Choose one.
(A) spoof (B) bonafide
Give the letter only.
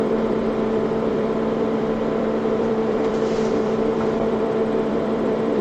A